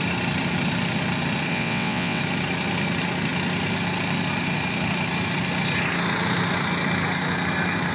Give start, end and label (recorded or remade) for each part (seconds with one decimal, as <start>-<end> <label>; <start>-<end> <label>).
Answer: 0.0-1.5 recorded; 1.5-2.2 remade; 2.2-7.9 recorded